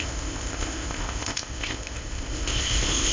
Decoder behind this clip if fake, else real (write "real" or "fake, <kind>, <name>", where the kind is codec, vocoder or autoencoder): fake, codec, ZipCodec